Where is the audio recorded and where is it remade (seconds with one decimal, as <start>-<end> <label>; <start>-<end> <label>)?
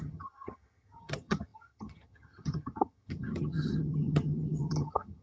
0.0-5.2 remade